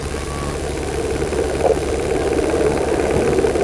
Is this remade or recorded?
recorded